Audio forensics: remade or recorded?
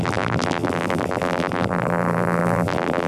remade